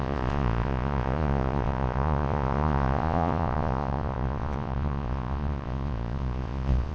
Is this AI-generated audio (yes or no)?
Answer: yes